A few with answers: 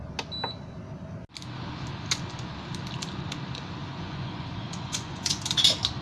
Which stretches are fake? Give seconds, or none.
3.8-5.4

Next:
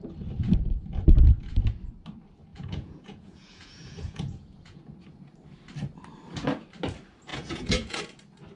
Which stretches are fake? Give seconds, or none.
2.5-4.8; 7.3-8.0

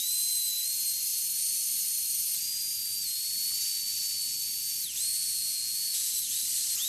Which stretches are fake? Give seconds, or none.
5.1-6.1

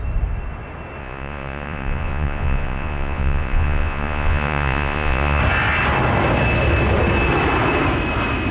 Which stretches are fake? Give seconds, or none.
1.0-5.4

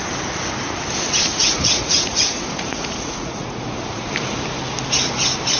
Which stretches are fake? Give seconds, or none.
1.3-4.1